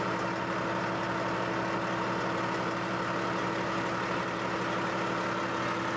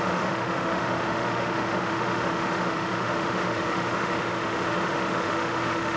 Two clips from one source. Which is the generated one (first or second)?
second